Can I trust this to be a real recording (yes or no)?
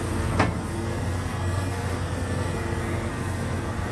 no